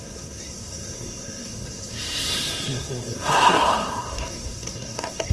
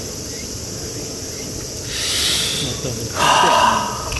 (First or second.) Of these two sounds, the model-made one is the first